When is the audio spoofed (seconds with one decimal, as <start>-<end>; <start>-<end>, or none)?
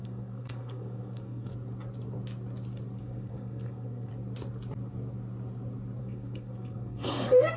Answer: 0.0-1.5; 3.0-4.1; 6.0-7.6